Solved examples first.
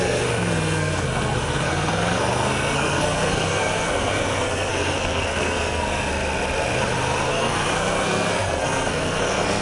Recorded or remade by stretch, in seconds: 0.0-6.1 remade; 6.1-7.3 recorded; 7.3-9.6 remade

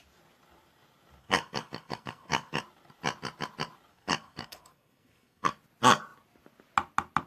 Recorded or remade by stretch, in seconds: 0.0-1.2 recorded; 1.2-2.6 remade; 2.6-3.9 recorded; 3.9-5.5 remade; 5.5-7.3 recorded

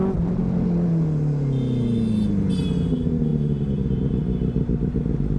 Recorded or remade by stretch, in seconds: 0.0-5.4 recorded

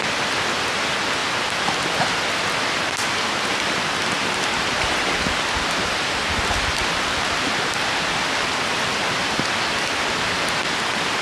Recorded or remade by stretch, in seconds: 0.0-11.2 recorded

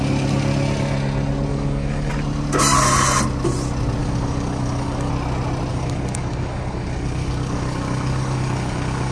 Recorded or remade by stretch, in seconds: 0.0-1.5 recorded; 1.5-2.1 remade; 2.1-4.0 recorded; 4.0-5.1 remade; 5.1-5.7 recorded; 5.7-9.1 remade

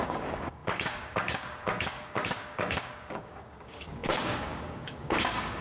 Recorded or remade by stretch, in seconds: 0.0-5.6 remade

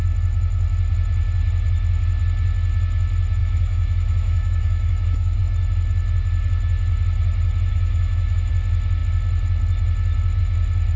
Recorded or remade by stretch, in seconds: 0.0-3.4 recorded; 3.4-5.4 remade; 5.4-7.7 recorded; 7.7-8.5 remade; 8.5-11.0 recorded

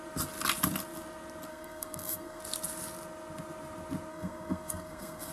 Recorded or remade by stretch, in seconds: 0.0-1.5 recorded; 1.5-2.4 remade; 2.4-4.1 recorded; 4.1-5.3 remade